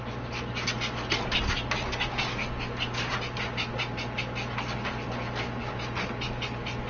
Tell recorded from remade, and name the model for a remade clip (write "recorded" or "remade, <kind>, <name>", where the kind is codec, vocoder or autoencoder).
recorded